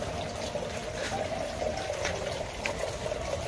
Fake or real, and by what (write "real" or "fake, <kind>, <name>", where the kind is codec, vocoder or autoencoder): real